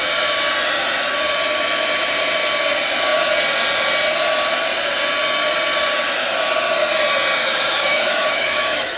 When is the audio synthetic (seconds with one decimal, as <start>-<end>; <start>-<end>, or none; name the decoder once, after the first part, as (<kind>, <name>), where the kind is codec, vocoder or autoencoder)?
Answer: 7.4-9.0 (autoencoder, DAC-VAE)